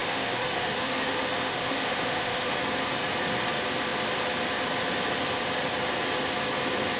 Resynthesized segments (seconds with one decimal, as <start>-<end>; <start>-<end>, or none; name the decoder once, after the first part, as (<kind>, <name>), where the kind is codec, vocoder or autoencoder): 0.0-2.6 (autoencoder, DAC-VAE)